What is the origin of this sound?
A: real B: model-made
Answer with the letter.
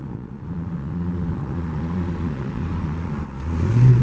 B